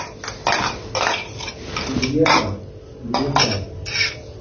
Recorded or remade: recorded